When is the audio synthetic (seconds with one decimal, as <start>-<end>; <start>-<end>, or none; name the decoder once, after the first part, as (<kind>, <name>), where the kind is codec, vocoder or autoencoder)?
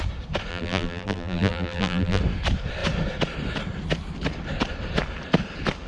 0.5-2.2 (vocoder, BigVGAN v2)